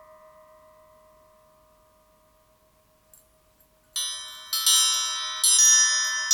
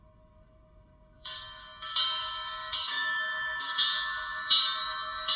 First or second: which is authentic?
first